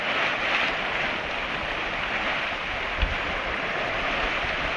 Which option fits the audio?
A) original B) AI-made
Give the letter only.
A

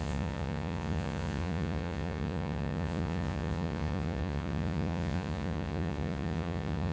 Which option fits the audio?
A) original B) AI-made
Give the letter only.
B